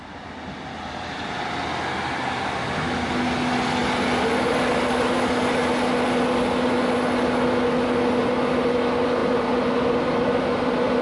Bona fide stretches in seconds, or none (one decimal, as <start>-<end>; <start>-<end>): 0.0-11.0